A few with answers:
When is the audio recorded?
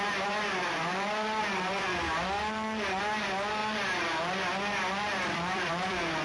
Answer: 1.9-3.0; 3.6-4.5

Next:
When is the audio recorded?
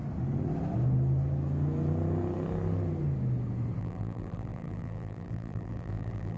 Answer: 0.0-3.8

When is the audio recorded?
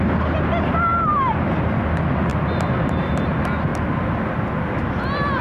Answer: 0.0-0.9; 1.5-2.3; 3.3-5.4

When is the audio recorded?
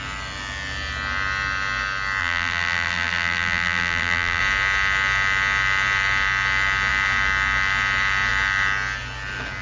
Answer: 0.0-2.2; 4.4-9.6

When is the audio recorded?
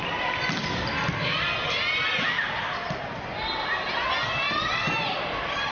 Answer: 0.0-5.7